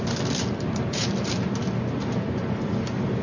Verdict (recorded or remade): recorded